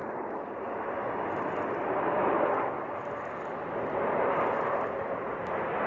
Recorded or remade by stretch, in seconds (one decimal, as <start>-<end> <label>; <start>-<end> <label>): 0.0-5.9 recorded